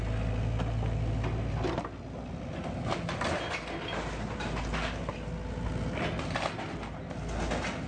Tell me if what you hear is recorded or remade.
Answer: recorded